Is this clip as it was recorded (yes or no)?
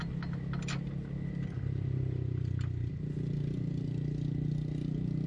yes